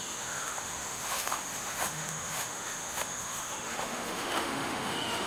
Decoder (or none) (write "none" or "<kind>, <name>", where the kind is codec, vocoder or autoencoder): autoencoder, DAC-VAE